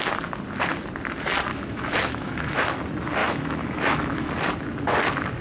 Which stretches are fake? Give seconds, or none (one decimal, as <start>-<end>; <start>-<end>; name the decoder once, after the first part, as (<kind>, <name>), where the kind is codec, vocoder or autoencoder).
1.5-2.8 (autoencoder, DAC-VAE); 3.2-4.3